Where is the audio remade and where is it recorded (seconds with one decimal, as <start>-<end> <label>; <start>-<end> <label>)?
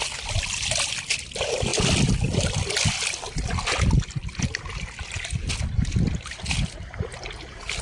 0.0-7.8 recorded